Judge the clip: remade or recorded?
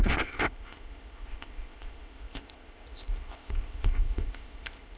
remade